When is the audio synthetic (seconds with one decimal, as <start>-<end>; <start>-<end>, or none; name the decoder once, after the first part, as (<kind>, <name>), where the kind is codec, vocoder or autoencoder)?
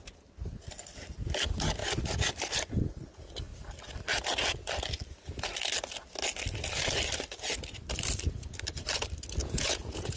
9.4-10.2 (vocoder, Vocos)